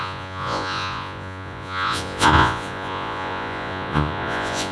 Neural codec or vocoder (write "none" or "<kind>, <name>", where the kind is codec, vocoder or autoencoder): vocoder, Vocos